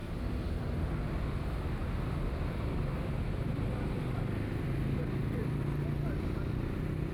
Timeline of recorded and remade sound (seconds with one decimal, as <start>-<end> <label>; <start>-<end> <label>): 0.0-1.2 remade; 1.2-1.8 recorded; 1.8-3.4 remade; 3.4-5.0 recorded; 5.0-5.6 remade; 5.6-7.1 recorded